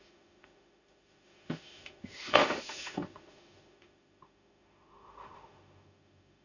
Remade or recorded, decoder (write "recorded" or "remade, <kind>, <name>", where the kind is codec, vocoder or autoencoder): remade, autoencoder, DAC-VAE